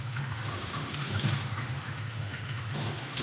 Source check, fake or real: fake